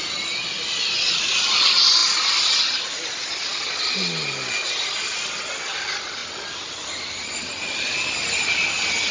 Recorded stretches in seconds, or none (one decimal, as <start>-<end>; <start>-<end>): 0.0-9.1